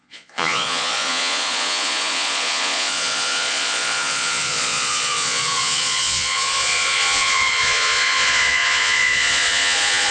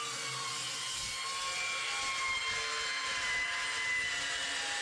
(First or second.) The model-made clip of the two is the first